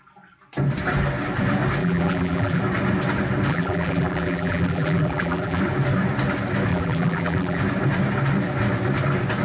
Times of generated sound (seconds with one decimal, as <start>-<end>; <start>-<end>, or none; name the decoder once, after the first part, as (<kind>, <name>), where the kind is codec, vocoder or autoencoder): 1.8-2.6 (vocoder, BigVGAN v2); 3.5-5.6; 6.7-7.6